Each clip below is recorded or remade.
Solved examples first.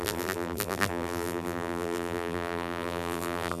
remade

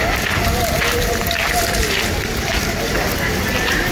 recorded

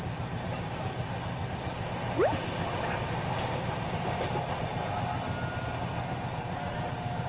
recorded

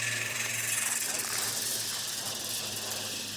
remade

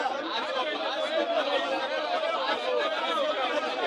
remade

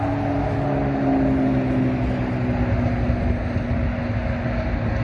recorded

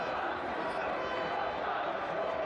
remade